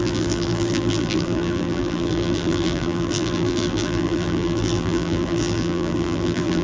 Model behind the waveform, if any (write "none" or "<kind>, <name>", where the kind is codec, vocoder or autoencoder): vocoder, BigVGAN v2